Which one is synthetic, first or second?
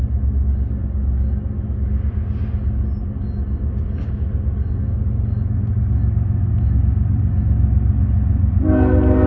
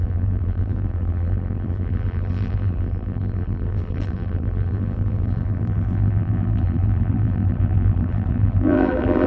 second